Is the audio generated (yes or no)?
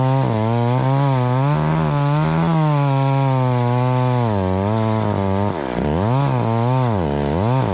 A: no